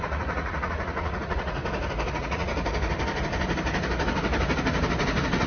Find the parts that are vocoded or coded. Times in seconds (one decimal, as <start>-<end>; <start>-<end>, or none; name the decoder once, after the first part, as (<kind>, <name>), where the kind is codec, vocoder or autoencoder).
0.0-1.6 (vocoder, Vocos); 2.1-2.5

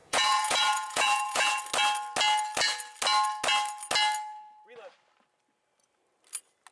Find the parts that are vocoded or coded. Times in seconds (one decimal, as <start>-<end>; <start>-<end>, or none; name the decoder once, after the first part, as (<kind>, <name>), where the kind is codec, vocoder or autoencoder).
0.0-1.6 (vocoder, Vocos)

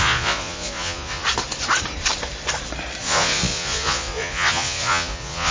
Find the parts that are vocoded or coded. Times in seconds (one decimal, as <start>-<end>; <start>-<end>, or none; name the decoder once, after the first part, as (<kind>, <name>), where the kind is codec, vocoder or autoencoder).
0.0-1.2 (vocoder, Vocos); 3.0-5.5

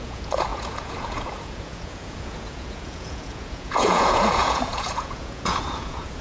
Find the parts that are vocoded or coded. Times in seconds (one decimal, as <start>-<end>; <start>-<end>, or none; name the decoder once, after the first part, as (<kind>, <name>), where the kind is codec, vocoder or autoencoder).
0.0-6.2 (vocoder, Vocos)

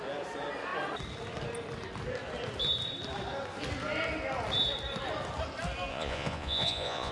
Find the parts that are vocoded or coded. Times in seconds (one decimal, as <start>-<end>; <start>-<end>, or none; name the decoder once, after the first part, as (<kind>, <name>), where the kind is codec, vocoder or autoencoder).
5.9-7.1 (vocoder, Vocos)

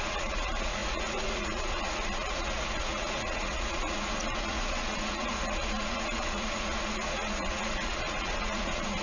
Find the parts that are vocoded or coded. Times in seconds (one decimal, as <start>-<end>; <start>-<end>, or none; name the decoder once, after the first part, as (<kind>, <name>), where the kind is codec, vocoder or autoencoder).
0.0-9.0 (vocoder, Vocos)